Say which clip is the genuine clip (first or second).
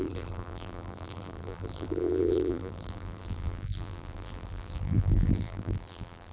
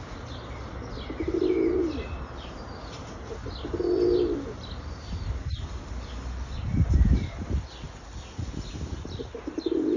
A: second